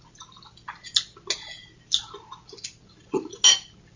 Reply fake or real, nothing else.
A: real